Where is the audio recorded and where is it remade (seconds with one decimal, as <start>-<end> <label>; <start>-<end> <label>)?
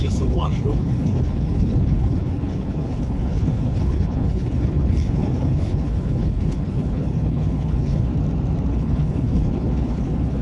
0.0-8.1 remade; 8.1-8.7 recorded; 8.7-10.4 remade